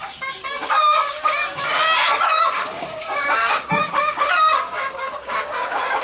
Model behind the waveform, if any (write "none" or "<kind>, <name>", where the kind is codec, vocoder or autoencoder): codec, DAC